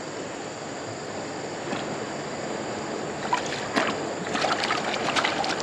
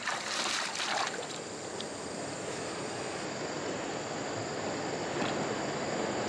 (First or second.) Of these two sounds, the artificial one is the second